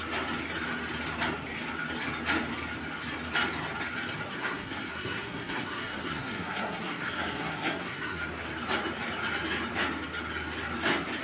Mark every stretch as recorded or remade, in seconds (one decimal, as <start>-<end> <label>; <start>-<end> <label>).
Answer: 0.0-4.3 recorded; 4.3-8.2 remade; 8.2-11.2 recorded